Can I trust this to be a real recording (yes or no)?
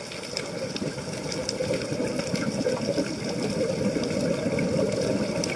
yes